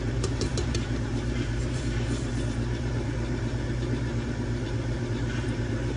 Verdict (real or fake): fake